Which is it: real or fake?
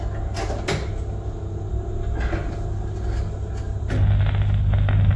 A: real